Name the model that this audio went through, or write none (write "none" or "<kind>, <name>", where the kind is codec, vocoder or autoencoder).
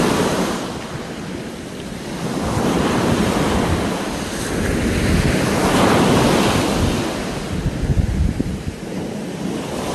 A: none